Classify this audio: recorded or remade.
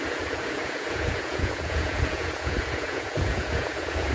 remade